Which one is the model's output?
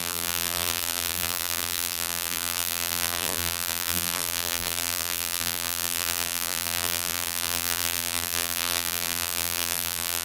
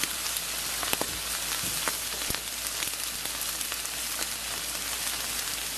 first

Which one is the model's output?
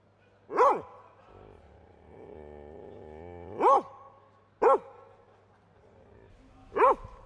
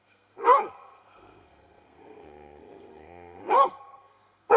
second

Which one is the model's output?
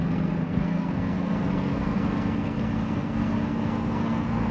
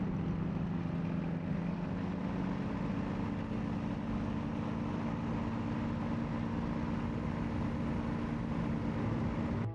first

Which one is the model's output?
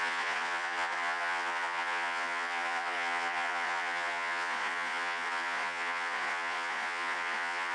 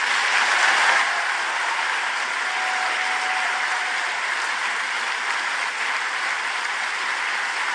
first